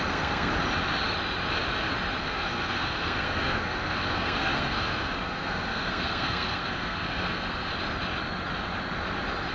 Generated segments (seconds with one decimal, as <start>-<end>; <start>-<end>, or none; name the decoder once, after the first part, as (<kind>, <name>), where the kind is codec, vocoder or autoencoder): 0.0-0.5 (codec, SNAC); 2.2-7.7